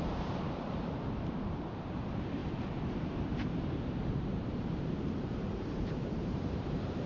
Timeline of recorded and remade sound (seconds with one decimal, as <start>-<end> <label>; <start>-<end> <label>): 0.0-2.4 remade; 2.4-3.8 recorded; 3.8-7.1 remade